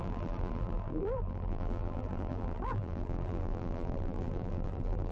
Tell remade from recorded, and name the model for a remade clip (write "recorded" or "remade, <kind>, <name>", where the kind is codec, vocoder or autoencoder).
remade, vocoder, BigVGAN v2